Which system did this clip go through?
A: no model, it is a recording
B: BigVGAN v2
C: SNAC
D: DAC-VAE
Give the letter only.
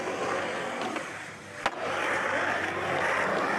A